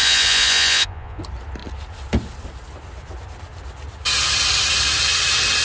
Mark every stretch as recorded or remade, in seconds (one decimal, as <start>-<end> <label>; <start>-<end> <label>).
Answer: 0.0-1.2 remade; 1.2-5.6 recorded